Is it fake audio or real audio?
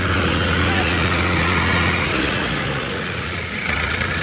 fake